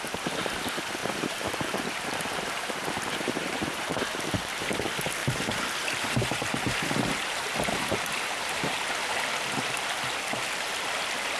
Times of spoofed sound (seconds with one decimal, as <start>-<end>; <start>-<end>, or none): 1.0-4.0; 5.2-8.9